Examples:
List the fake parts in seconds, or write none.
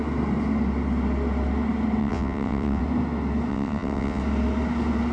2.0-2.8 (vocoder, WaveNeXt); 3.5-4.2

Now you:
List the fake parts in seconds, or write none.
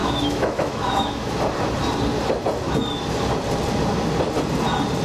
0.0-1.3 (autoencoder, DAC-VAE)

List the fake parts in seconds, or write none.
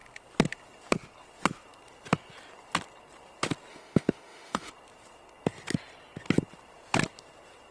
3.7-4.7 (autoencoder, DAC-VAE)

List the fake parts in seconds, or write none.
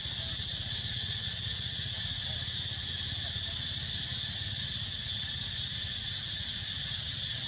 1.0-1.9 (vocoder, Vocos)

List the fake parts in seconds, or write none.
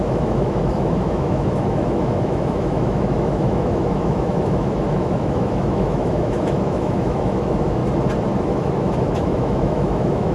0.0-7.8 (autoencoder, DAC-VAE); 8.4-10.3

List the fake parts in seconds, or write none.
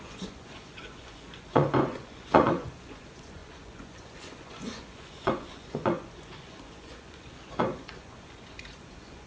0.0-9.3 (vocoder, Vocos)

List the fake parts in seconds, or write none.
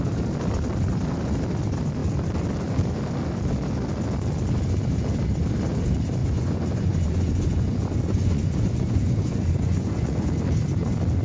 6.2-10.3 (vocoder, Vocos)